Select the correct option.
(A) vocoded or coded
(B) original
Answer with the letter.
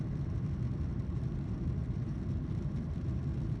A